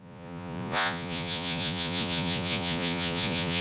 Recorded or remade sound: remade